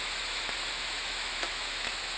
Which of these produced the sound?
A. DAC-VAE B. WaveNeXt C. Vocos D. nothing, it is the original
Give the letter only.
A